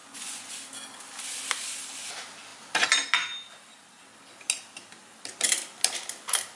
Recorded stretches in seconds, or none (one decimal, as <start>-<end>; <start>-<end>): 0.5-6.6

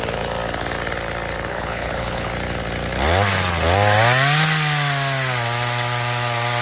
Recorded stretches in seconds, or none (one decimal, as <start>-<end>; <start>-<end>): 0.0-1.5; 2.3-6.6